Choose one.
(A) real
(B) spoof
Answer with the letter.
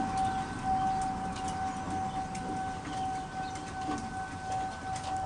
A